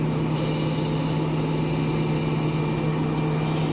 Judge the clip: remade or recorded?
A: recorded